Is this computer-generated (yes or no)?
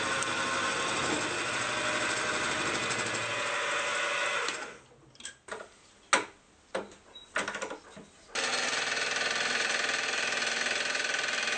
no